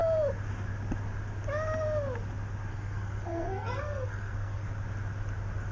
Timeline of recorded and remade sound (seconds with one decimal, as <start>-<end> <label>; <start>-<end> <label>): 0.0-2.7 recorded; 2.7-4.7 remade; 4.7-5.7 recorded